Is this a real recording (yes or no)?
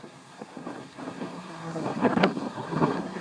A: no